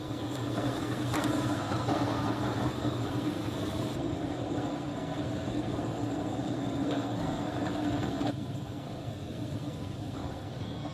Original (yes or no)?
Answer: no